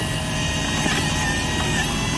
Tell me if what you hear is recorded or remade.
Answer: recorded